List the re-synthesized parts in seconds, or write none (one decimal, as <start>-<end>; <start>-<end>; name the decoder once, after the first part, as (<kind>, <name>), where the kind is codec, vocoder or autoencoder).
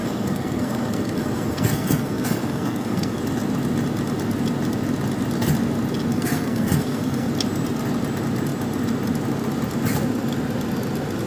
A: 0.0-3.2 (codec, SNAC); 6.1-7.3